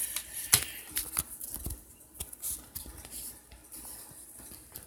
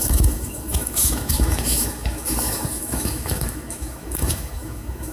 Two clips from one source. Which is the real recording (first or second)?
first